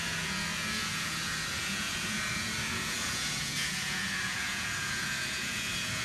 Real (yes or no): no